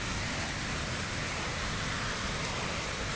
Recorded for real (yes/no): yes